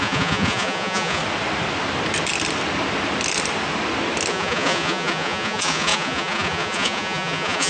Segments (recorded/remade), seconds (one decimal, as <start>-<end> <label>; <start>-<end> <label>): 0.0-1.2 remade; 1.2-4.3 recorded; 4.3-7.7 remade